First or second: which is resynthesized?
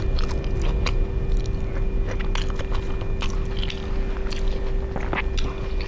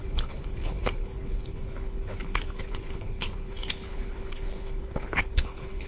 second